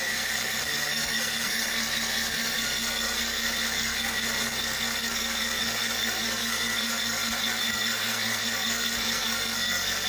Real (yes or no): no